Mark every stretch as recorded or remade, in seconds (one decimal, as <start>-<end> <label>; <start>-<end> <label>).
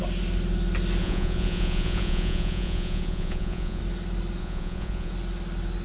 0.0-1.0 recorded; 1.0-3.8 remade; 3.8-4.4 recorded; 4.4-5.1 remade; 5.1-5.8 recorded